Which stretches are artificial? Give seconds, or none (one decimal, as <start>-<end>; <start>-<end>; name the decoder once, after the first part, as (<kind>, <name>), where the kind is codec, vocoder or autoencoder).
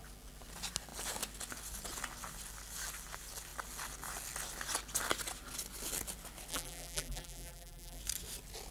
6.5-8.0 (vocoder, BigVGAN v2)